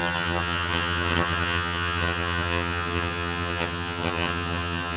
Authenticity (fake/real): fake